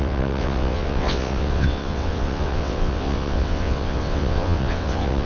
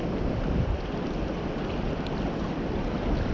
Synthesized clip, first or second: first